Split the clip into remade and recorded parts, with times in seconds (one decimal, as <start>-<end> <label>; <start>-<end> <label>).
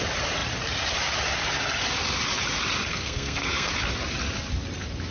0.0-2.9 recorded; 2.9-3.7 remade; 3.7-5.1 recorded